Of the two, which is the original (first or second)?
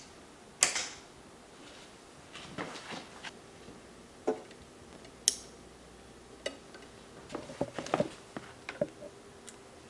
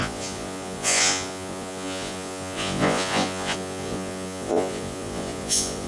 first